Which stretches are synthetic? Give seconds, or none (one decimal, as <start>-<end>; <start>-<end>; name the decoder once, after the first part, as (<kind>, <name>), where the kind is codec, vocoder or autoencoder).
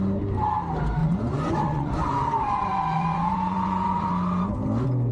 1.0-4.1 (vocoder, Vocos)